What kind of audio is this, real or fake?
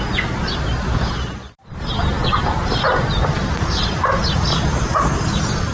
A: fake